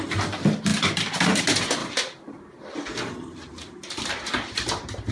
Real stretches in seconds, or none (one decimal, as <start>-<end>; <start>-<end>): 0.0-0.7; 1.4-1.8